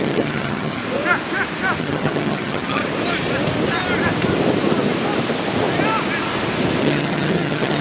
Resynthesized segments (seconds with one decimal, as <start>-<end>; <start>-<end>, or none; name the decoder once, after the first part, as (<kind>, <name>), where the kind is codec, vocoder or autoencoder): 0.0-0.8 (vocoder, HiFi-GAN); 1.8-2.8; 6.8-7.8